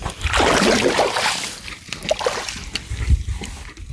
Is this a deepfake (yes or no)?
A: no